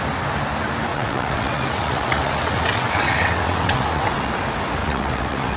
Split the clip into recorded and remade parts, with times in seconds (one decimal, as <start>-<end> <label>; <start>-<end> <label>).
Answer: 0.0-0.9 recorded; 0.9-4.3 remade; 4.3-4.8 recorded; 4.8-5.6 remade